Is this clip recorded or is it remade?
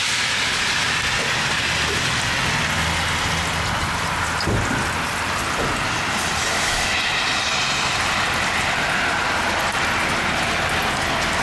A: recorded